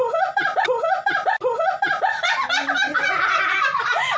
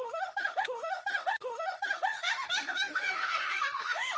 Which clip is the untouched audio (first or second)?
first